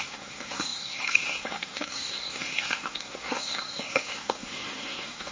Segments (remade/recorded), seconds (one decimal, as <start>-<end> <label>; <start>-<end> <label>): 0.0-5.3 remade